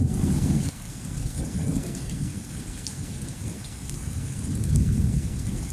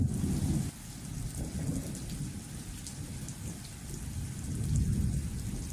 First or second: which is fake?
first